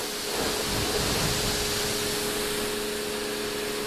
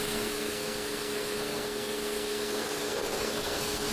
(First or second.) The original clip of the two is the first